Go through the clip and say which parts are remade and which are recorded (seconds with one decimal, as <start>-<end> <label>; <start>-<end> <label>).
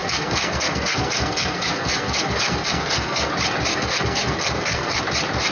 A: 0.0-3.3 remade; 3.3-3.7 recorded; 3.7-5.0 remade; 5.0-5.5 recorded